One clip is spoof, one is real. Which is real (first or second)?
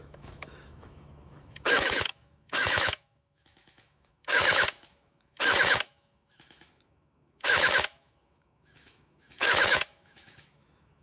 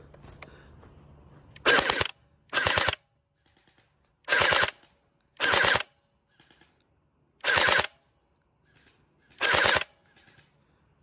second